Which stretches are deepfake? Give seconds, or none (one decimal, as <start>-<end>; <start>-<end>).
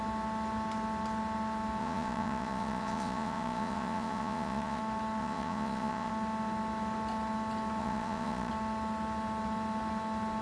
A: 1.8-4.8; 5.2-6.1; 7.8-8.5